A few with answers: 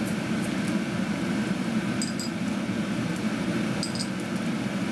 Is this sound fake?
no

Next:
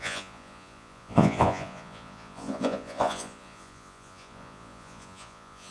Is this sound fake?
yes